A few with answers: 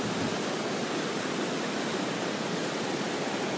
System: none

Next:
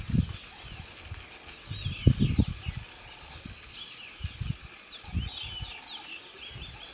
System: none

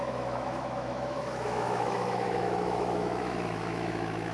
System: autoencoder, DAC-VAE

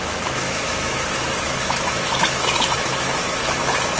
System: autoencoder, DAC-VAE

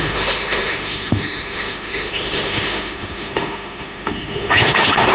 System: autoencoder, DAC-VAE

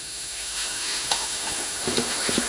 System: autoencoder, DAC-VAE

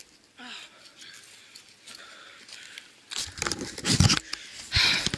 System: none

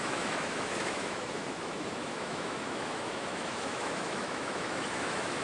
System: autoencoder, DAC-VAE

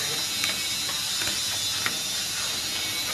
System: none